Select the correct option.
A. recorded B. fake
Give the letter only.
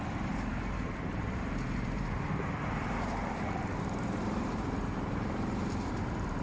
B